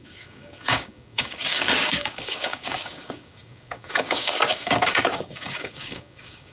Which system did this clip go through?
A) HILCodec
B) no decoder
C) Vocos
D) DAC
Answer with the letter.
D